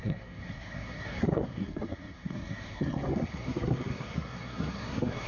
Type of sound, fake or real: fake